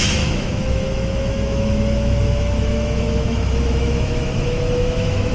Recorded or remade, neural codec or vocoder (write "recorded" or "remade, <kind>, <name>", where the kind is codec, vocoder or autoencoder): remade, autoencoder, DAC-VAE